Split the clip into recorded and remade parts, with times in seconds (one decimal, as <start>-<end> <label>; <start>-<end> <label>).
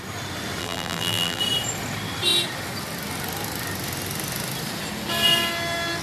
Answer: 0.0-0.6 recorded; 0.6-1.4 remade; 1.4-6.0 recorded